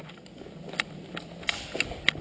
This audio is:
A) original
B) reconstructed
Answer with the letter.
A